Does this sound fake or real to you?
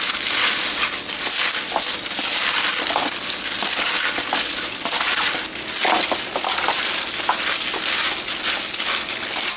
real